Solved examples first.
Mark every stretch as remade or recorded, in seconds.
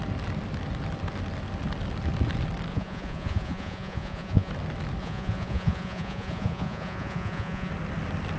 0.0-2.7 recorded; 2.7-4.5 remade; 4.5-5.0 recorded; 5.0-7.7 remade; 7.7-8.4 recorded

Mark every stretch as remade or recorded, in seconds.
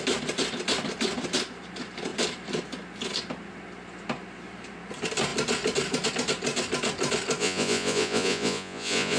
0.0-7.4 recorded; 7.4-9.2 remade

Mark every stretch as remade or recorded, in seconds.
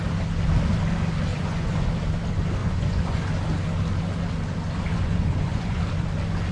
0.0-1.3 recorded; 1.3-1.9 remade; 1.9-2.6 recorded; 2.6-3.2 remade; 3.2-4.9 recorded; 4.9-5.8 remade; 5.8-6.5 recorded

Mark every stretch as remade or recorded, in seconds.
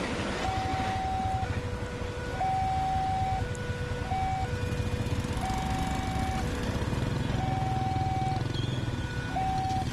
0.0-9.9 recorded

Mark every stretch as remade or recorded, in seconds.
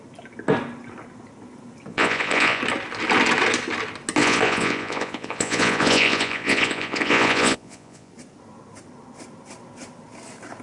0.0-1.9 recorded; 1.9-2.6 remade; 2.6-4.2 recorded; 4.2-8.1 remade; 8.1-10.6 recorded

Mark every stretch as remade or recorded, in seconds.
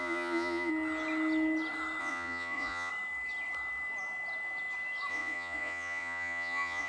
0.0-0.7 remade; 0.7-2.0 recorded; 2.0-2.9 remade; 2.9-5.1 recorded; 5.1-6.9 remade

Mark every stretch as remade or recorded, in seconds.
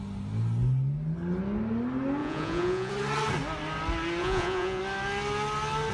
0.0-2.2 recorded; 2.2-2.9 remade; 2.9-4.2 recorded; 4.2-4.8 remade; 4.8-5.9 recorded